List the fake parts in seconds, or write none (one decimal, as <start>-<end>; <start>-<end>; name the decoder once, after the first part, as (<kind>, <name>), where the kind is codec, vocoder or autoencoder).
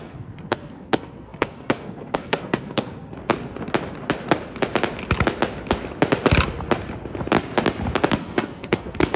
0.0-3.2 (codec, SNAC); 8.2-9.2